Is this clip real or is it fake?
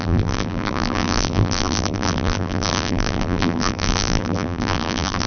fake